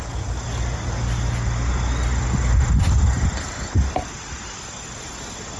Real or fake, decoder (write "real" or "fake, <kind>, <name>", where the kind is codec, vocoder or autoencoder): real